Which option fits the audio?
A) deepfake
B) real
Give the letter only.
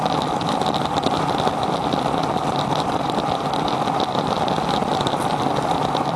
A